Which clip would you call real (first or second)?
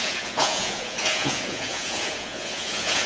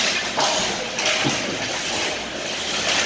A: second